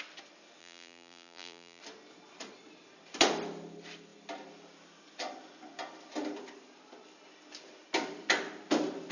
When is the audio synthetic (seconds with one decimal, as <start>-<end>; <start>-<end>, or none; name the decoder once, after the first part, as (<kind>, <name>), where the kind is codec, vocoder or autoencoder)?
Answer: 0.6-1.8 (vocoder, BigVGAN v2)